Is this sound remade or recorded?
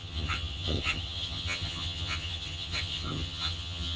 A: remade